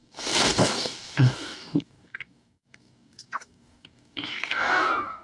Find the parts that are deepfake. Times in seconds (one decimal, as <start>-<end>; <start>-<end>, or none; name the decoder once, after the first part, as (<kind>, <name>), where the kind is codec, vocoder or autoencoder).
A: 0.0-5.2 (codec, DAC)